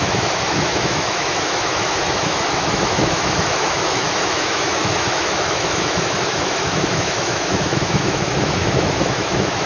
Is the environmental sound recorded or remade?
remade